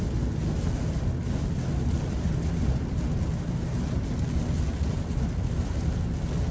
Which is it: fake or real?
real